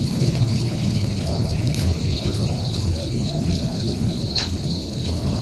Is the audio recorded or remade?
remade